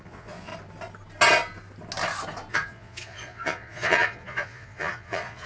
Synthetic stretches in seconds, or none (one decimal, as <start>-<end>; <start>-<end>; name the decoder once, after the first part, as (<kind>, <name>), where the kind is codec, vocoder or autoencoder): 0.0-0.5 (vocoder, Vocos); 2.5-5.5